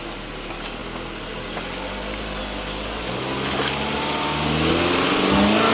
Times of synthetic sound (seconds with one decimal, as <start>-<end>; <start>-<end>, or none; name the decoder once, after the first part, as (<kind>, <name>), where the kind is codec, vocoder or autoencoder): none